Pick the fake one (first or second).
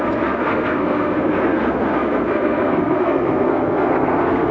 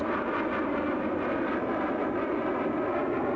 first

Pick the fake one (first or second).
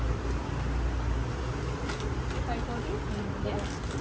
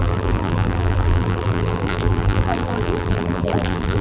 second